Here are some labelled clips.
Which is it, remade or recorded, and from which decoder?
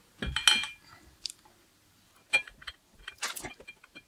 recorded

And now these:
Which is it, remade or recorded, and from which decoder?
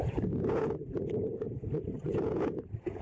remade, vocoder, Vocos